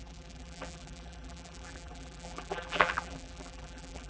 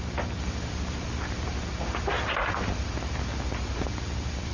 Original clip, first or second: second